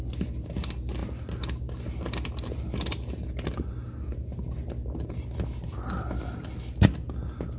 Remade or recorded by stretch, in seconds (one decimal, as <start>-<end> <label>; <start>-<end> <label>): 0.0-7.6 recorded